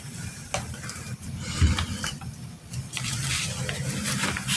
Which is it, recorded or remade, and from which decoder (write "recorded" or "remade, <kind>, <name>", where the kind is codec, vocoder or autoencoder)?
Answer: remade, vocoder, BigVGAN v2